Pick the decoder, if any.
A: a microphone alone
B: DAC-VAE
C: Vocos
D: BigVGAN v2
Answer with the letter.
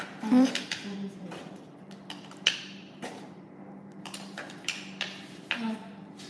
D